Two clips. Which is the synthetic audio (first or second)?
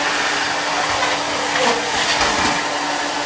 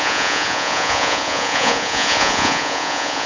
second